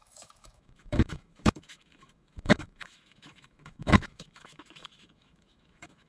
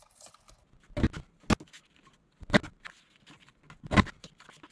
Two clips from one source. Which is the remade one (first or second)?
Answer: first